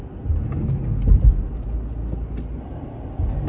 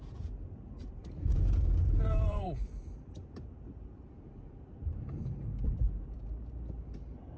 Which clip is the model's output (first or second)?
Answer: second